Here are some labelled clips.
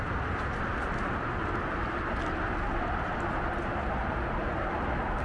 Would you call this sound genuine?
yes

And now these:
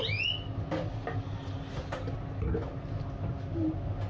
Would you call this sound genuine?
yes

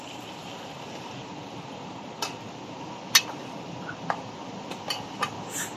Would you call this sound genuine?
yes